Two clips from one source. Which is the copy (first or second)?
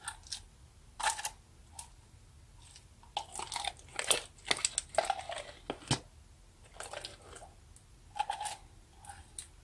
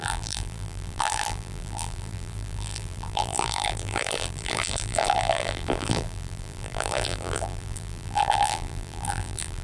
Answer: second